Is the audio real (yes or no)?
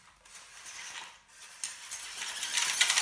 yes